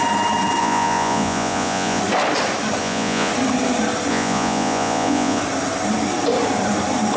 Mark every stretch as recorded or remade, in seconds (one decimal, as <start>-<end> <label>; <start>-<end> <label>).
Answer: 0.0-0.6 recorded; 0.6-2.0 remade; 2.0-2.8 recorded; 2.8-3.3 remade; 3.3-4.1 recorded; 4.1-5.4 remade; 5.4-7.2 recorded